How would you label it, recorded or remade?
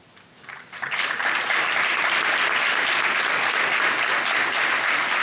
recorded